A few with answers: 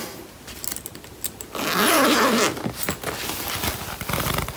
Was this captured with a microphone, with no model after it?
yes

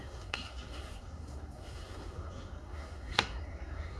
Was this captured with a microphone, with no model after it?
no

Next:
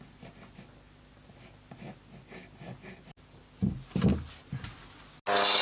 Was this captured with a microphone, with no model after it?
yes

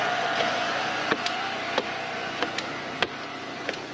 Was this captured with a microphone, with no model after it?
no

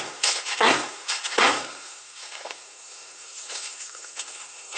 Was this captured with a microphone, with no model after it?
no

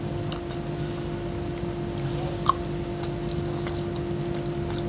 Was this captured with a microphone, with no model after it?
yes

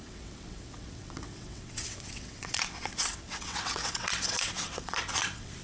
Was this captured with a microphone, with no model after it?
no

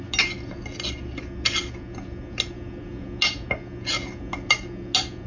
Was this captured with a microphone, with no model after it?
yes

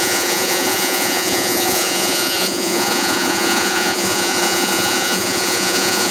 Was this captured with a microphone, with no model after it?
no